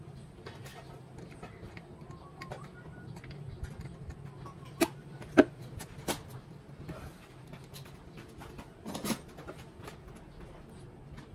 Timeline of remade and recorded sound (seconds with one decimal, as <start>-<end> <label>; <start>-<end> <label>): 0.0-11.3 recorded